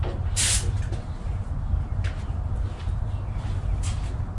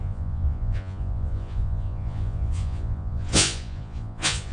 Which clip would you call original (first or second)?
first